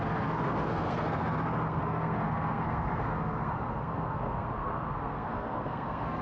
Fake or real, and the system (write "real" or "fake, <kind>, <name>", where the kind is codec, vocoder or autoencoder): fake, codec, SNAC